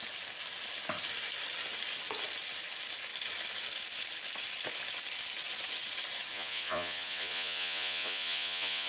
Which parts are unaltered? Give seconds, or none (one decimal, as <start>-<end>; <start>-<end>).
0.0-6.3